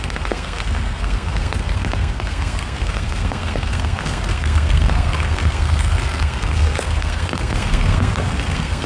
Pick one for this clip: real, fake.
fake